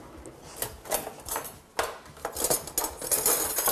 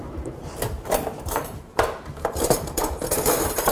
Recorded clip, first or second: first